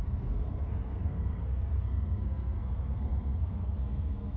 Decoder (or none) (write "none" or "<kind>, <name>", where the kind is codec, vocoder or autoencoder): codec, SNAC